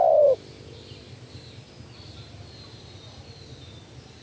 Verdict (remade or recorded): recorded